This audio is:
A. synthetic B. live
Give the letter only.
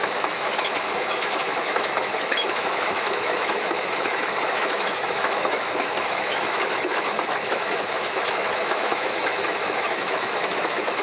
A